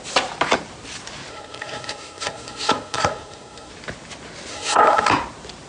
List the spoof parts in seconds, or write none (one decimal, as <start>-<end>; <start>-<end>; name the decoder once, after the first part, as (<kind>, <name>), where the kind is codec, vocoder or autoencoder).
1.3-3.7 (codec, SNAC); 4.5-5.1

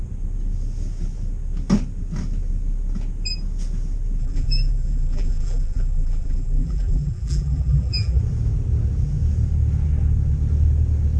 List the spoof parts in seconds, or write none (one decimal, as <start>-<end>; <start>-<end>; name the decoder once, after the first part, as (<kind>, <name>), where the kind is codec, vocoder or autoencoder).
4.2-8.2 (vocoder, BigVGAN v2)

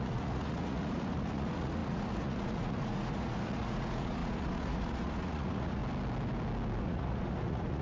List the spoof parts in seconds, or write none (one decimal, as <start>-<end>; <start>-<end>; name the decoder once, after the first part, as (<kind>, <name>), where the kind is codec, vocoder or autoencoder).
0.0-5.8 (vocoder, Vocos); 6.8-7.8

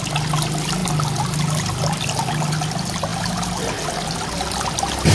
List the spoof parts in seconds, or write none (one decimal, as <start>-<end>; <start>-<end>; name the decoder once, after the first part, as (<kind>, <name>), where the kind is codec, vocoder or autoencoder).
none

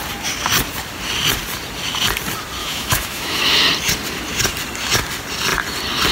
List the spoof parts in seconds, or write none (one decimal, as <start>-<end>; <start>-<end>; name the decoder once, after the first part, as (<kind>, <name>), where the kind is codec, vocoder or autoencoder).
2.6-3.6 (autoencoder, DAC-VAE)